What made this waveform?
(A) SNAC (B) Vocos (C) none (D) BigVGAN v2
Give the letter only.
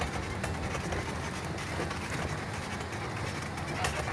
C